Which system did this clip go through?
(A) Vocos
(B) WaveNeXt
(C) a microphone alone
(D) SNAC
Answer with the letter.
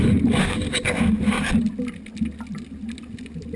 C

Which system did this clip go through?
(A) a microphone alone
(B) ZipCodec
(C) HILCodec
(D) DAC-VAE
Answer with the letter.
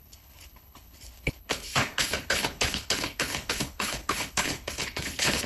C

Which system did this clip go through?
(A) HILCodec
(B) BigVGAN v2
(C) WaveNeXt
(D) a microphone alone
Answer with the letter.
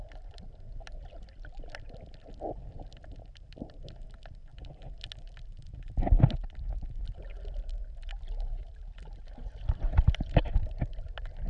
D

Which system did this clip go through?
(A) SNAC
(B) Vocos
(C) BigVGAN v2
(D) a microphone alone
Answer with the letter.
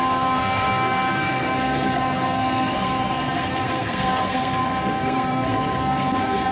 A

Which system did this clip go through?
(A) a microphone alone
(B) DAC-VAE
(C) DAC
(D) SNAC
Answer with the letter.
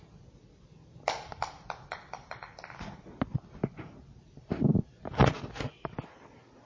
A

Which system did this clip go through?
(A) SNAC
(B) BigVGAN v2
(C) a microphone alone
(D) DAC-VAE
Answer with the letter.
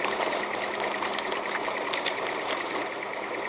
C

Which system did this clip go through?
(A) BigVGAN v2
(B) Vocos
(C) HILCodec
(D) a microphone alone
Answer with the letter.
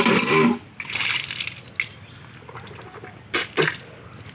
D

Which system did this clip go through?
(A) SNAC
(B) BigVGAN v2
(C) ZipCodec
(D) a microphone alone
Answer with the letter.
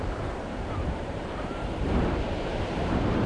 B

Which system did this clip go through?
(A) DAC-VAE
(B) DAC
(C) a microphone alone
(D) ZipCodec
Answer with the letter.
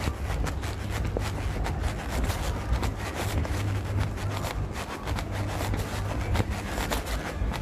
C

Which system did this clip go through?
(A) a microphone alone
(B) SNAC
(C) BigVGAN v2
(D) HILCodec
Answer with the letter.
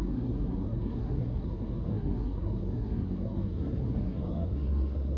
B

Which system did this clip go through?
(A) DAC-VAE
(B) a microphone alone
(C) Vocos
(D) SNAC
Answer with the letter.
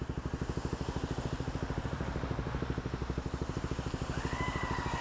B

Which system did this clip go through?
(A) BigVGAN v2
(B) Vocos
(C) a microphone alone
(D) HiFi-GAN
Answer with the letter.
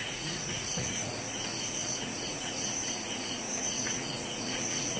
B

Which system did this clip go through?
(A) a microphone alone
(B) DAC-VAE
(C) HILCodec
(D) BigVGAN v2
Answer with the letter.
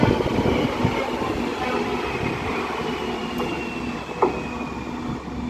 A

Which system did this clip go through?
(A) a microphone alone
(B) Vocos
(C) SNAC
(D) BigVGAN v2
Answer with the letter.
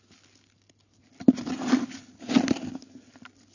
A